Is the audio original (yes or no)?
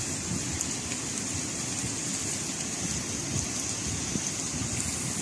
yes